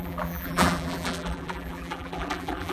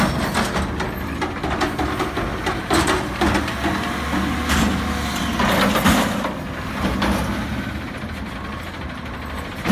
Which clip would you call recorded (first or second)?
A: second